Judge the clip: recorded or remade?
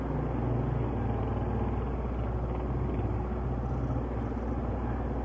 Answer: recorded